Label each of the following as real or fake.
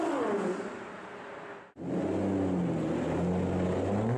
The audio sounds real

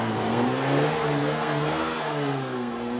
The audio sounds fake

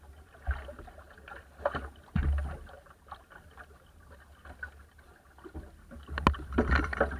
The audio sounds real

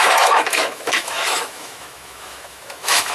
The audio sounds fake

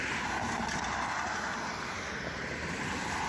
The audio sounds real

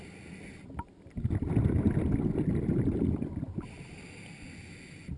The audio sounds real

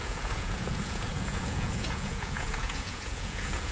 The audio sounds fake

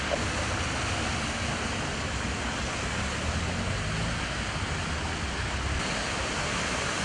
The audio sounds real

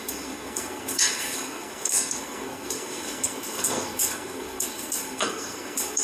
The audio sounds fake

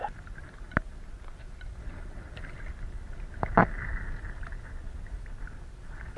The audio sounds real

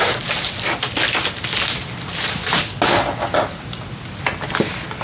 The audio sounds real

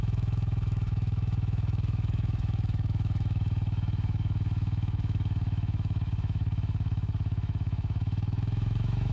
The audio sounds fake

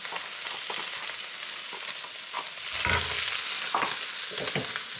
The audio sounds real